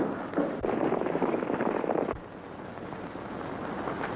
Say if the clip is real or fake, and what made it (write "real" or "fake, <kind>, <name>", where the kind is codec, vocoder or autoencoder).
real